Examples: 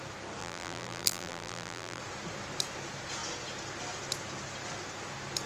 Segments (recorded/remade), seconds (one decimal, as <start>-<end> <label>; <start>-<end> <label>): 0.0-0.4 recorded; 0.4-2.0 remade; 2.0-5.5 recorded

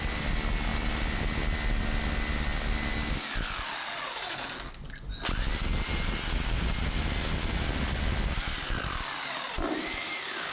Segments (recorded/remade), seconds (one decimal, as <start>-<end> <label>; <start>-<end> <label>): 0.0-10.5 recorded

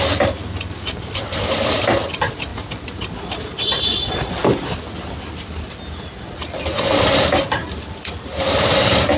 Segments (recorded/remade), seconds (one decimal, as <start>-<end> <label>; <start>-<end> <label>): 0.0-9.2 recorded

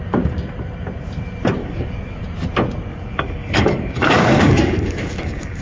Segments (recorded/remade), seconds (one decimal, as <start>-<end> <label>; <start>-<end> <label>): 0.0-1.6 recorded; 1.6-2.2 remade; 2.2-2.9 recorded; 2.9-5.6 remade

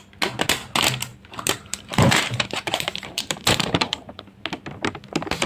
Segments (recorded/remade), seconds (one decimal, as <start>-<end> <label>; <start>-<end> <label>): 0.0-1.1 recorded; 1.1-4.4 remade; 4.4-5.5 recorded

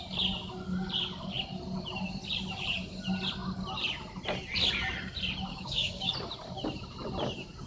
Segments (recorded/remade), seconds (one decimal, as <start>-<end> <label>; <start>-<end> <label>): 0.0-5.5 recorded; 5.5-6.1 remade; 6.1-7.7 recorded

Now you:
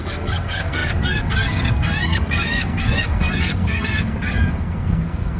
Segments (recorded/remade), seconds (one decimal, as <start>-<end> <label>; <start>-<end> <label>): 0.0-5.4 remade

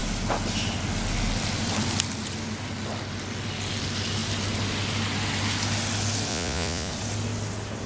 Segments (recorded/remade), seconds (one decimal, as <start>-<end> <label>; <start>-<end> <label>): 0.0-6.3 recorded; 6.3-6.9 remade; 6.9-7.9 recorded